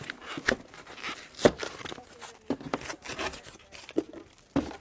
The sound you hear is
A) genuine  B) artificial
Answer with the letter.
A